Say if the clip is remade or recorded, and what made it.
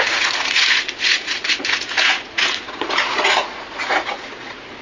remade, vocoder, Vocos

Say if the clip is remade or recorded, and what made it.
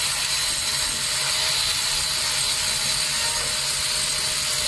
recorded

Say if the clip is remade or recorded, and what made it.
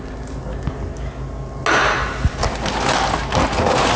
recorded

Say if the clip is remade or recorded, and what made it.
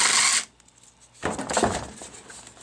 recorded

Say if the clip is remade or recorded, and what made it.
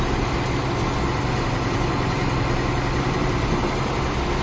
recorded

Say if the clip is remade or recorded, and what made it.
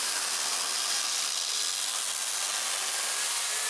recorded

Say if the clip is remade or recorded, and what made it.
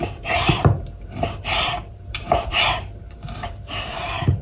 remade, vocoder, BigVGAN v2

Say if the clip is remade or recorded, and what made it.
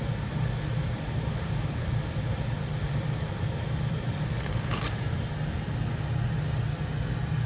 recorded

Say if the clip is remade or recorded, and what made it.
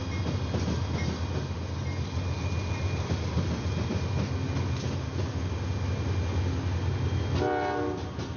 recorded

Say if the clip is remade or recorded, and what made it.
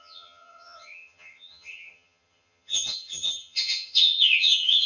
remade, vocoder, HiFi-GAN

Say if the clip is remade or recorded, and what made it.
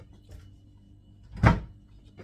recorded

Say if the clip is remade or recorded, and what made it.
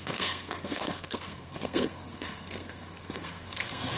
remade, codec, SNAC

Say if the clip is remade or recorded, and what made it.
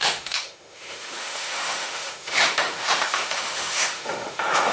remade, autoencoder, DAC-VAE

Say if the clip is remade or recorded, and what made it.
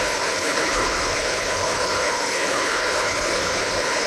remade, codec, HILCodec